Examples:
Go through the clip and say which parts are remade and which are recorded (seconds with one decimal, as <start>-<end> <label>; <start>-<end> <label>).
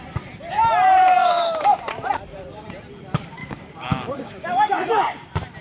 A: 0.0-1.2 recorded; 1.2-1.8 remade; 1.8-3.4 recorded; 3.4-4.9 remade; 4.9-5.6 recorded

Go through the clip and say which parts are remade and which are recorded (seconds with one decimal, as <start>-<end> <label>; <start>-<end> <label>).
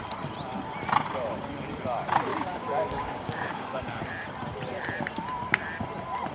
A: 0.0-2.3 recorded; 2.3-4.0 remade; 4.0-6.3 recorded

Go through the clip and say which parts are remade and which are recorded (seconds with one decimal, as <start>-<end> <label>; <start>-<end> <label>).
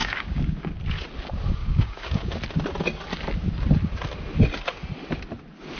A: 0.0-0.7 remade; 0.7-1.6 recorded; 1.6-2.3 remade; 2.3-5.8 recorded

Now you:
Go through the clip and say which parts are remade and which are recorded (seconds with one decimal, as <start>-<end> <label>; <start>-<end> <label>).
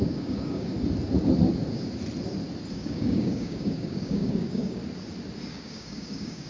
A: 0.0-0.7 remade; 0.7-2.7 recorded; 2.7-4.8 remade; 4.8-5.5 recorded; 5.5-6.5 remade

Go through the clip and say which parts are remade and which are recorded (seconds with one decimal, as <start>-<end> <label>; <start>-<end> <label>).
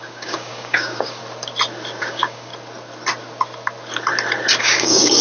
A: 0.0-1.2 remade; 1.2-2.0 recorded; 2.0-2.5 remade; 2.5-4.6 recorded; 4.6-5.2 remade